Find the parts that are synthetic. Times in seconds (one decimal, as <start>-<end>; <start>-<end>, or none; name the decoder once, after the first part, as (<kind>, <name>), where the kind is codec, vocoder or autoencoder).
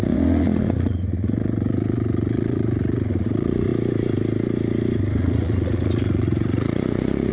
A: 0.0-3.7 (vocoder, Vocos); 5.2-7.3